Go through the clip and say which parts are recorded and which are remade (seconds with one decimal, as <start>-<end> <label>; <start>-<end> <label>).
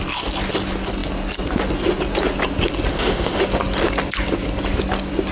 0.0-2.9 recorded; 2.9-3.4 remade; 3.4-5.3 recorded